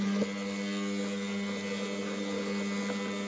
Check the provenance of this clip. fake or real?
real